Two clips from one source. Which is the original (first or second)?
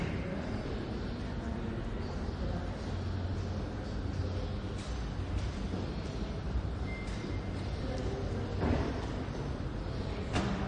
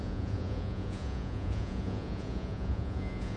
first